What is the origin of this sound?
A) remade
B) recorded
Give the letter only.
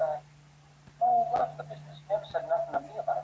B